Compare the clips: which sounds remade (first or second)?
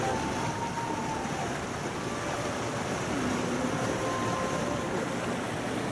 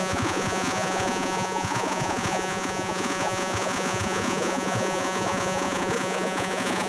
second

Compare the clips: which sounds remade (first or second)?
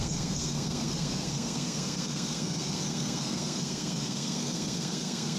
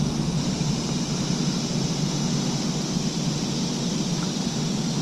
first